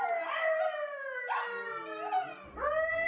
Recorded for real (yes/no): yes